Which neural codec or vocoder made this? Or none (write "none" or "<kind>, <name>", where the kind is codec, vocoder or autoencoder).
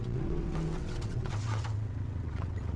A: vocoder, WaveNeXt